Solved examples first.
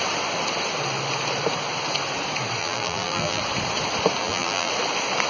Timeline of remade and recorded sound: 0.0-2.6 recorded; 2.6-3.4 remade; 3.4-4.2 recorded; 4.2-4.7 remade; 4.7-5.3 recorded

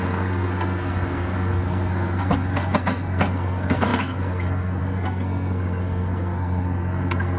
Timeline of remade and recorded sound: 0.0-7.4 remade